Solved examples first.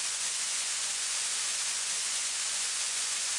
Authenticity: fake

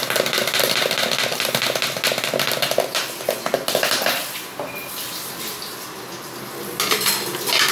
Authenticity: real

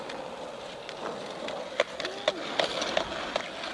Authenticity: real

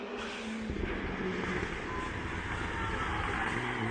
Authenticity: real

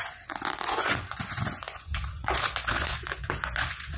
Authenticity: fake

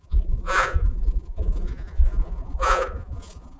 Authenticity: fake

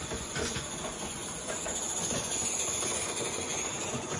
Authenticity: fake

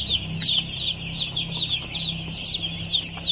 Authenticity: real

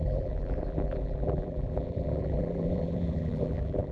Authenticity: fake